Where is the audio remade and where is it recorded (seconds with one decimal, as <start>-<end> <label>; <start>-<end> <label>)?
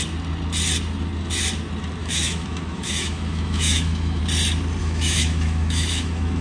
0.0-2.0 recorded; 2.0-4.2 remade; 4.2-4.8 recorded; 4.8-6.4 remade